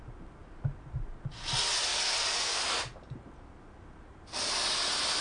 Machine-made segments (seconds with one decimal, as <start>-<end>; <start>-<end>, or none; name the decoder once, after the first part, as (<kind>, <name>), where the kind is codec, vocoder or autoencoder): none